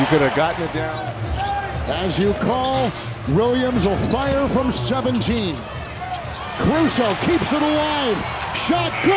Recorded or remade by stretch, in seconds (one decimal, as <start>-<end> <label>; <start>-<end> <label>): 0.0-9.2 recorded